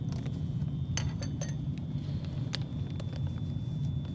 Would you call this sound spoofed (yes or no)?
no